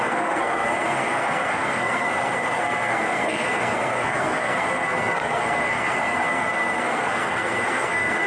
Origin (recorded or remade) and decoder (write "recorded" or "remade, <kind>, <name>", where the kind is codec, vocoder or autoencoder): remade, codec, SNAC